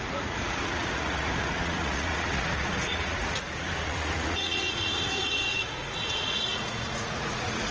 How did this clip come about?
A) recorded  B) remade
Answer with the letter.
B